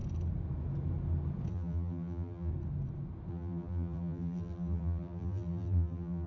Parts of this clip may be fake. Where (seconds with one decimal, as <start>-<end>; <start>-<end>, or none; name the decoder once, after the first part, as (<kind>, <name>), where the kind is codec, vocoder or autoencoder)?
1.5-2.5 (vocoder, BigVGAN v2); 3.3-6.3